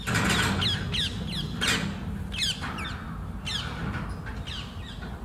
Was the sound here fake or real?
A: real